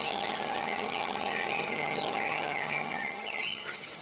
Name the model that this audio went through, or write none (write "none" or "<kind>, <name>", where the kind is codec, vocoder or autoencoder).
vocoder, HiFi-GAN